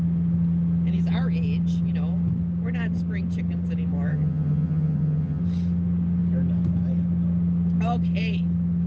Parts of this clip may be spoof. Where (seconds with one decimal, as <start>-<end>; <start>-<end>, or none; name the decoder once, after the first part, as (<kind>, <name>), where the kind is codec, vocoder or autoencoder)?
4.1-5.4 (vocoder, HiFi-GAN)